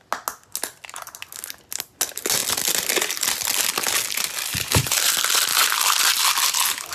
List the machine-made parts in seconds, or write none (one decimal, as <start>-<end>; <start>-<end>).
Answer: 4.5-5.1; 5.5-6.0